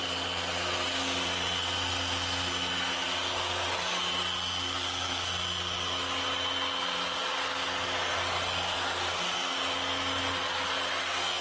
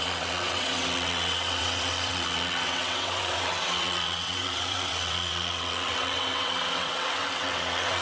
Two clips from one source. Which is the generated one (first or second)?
second